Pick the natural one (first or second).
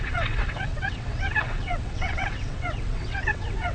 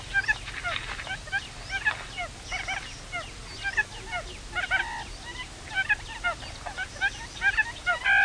second